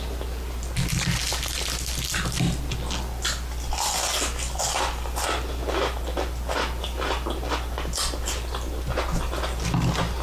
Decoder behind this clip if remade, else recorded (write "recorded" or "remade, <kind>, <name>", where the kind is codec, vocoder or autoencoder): recorded